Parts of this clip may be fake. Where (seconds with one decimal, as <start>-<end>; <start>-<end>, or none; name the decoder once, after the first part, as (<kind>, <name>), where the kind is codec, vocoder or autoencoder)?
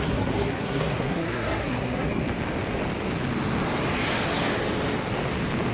0.0-2.2 (codec, SNAC)